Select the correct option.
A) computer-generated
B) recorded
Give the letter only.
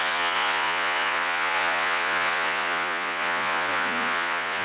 A